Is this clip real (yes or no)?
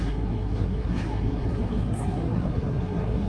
no